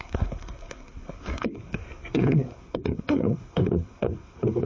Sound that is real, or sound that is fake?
fake